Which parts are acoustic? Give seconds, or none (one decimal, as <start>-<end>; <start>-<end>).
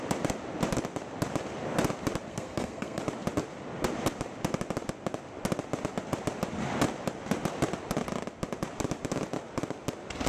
0.0-2.3; 3.0-10.3